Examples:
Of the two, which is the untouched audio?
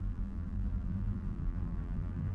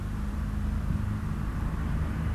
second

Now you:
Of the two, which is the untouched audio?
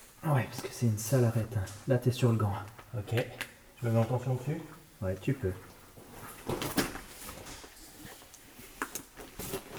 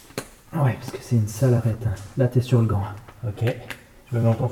first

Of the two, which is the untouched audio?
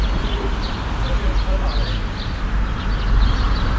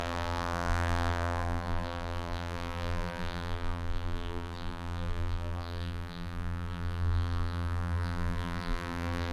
first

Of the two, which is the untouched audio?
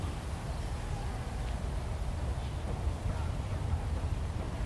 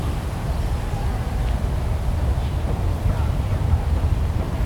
first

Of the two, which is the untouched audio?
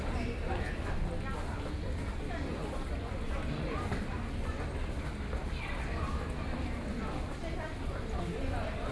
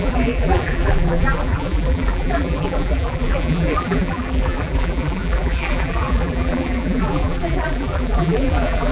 first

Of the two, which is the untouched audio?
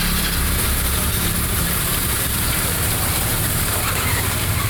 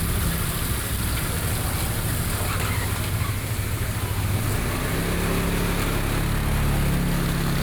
second